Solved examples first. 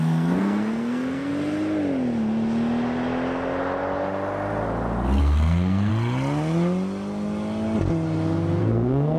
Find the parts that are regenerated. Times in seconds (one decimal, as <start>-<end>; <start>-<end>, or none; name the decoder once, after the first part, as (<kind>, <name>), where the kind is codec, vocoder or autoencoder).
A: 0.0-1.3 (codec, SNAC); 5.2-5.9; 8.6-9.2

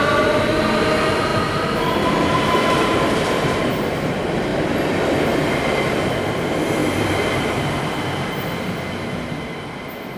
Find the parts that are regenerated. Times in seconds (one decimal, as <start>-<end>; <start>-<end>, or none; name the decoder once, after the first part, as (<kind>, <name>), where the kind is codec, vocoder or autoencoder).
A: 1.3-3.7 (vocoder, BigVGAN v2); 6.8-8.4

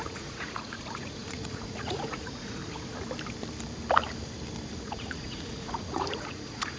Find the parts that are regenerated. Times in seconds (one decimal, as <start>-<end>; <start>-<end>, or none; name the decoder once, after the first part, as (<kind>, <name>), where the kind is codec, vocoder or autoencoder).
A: 0.0-2.6 (vocoder, Vocos); 4.8-6.8

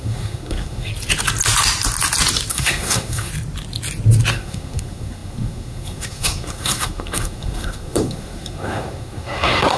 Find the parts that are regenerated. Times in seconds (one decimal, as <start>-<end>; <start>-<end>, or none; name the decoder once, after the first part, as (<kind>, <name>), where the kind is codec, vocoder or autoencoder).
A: 0.0-0.9 (codec, SNAC); 2.5-3.3; 4.3-9.8

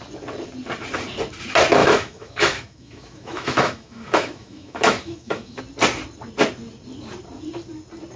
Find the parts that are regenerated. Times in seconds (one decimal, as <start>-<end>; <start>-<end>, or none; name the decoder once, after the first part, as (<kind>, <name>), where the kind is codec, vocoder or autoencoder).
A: 1.8-5.6 (autoencoder, DAC-VAE)